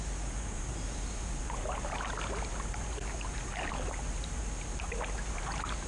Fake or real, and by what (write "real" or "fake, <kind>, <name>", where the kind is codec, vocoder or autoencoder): real